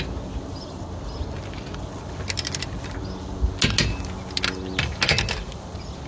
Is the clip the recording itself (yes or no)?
yes